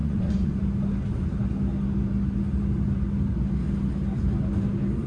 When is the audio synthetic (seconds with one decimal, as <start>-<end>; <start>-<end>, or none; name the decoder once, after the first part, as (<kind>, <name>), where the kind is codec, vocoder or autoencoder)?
0.0-0.6 (vocoder, Vocos)